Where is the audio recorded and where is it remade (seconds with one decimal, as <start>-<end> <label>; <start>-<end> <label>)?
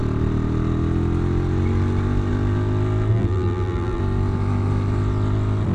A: 0.0-3.1 recorded; 3.1-4.0 remade; 4.0-5.7 recorded